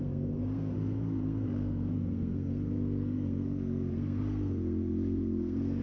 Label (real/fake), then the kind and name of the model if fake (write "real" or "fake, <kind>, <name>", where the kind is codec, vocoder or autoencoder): fake, codec, SNAC